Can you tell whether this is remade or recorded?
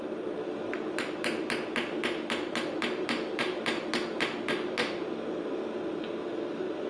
recorded